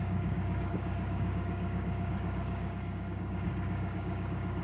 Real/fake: fake